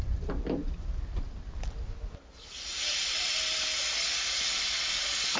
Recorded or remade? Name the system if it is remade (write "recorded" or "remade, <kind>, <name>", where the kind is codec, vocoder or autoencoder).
recorded